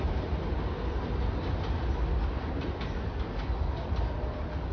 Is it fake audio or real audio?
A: real